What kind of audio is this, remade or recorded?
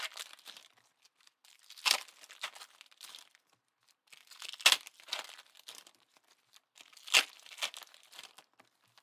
recorded